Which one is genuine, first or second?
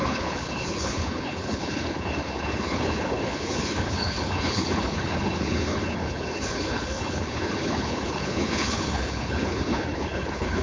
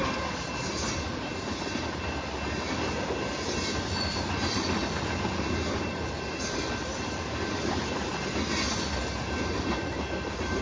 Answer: second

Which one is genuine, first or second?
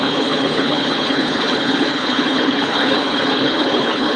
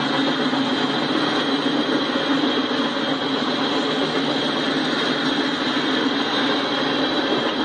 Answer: second